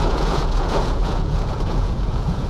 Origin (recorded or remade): remade